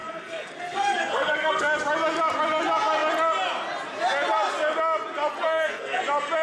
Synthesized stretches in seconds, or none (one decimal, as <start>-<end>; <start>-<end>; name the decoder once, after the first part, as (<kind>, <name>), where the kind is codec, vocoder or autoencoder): 0.0-1.6 (codec, SNAC); 5.3-6.0